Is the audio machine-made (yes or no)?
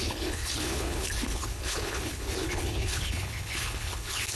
yes